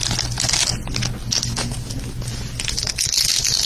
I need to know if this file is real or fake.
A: real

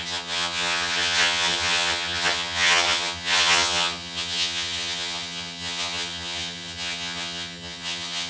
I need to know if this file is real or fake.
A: fake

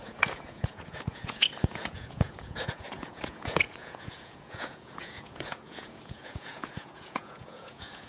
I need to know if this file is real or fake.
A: fake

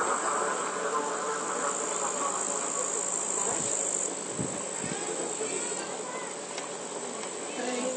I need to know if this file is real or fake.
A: real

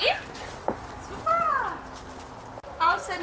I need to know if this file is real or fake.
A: real